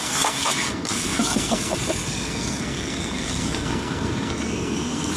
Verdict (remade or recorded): remade